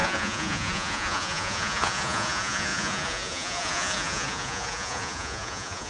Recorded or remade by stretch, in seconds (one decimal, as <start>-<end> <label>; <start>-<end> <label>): 0.0-5.9 remade